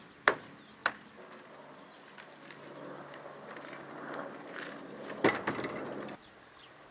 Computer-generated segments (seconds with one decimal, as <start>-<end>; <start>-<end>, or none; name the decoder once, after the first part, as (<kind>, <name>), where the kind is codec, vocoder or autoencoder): none